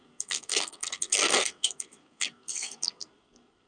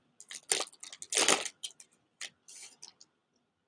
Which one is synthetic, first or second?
first